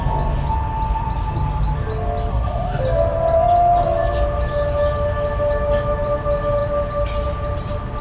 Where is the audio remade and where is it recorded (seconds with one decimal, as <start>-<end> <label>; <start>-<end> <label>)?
0.0-2.3 recorded; 2.3-2.8 remade; 2.8-8.0 recorded

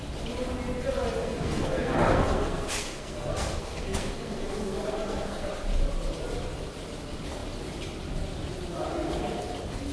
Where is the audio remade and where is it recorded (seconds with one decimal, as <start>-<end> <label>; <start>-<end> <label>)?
0.0-1.2 recorded; 1.2-5.5 remade; 5.5-8.9 recorded; 8.9-9.4 remade; 9.4-9.9 recorded

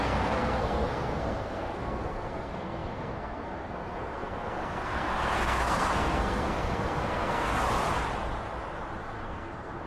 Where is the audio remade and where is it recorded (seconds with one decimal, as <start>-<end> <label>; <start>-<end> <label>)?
0.0-7.5 remade; 7.5-9.0 recorded; 9.0-9.9 remade

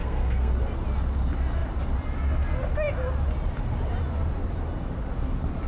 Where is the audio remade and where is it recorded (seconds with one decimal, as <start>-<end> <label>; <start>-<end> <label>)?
0.0-0.5 remade; 0.5-5.7 recorded

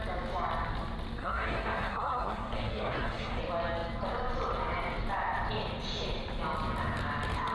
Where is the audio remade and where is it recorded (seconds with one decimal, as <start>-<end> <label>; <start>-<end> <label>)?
0.0-1.2 recorded; 1.2-3.4 remade; 3.4-7.5 recorded

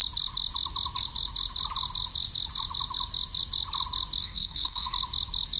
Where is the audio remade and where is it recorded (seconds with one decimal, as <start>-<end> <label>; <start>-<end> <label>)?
0.0-4.2 recorded; 4.2-4.9 remade; 4.9-5.6 recorded

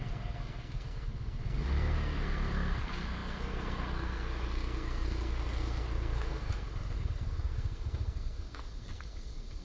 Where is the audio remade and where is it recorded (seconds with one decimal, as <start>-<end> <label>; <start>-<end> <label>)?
0.0-9.6 remade

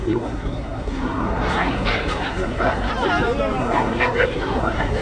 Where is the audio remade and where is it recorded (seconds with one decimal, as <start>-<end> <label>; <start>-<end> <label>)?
0.0-2.9 remade; 2.9-3.6 recorded; 3.6-5.0 remade